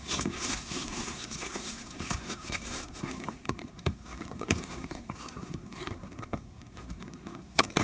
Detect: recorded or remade remade